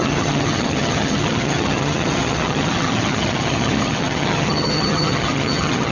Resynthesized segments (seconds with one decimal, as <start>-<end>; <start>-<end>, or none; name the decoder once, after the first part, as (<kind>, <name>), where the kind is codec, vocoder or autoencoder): 0.0-5.9 (vocoder, HiFi-GAN)